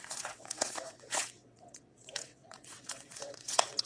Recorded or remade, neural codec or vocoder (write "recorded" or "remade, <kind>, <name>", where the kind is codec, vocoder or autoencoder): remade, vocoder, WaveNeXt